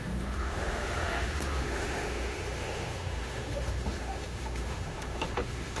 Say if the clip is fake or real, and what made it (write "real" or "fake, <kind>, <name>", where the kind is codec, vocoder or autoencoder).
fake, autoencoder, DAC-VAE